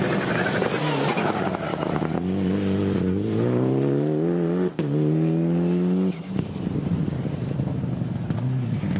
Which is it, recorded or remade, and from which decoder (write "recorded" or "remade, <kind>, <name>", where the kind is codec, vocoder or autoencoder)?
recorded